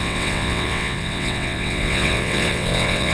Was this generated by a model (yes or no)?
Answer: yes